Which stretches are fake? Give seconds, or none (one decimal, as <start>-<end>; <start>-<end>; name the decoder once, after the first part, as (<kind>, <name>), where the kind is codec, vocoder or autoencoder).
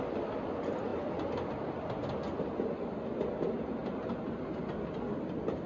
none